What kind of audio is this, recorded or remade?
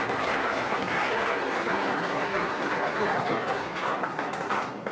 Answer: remade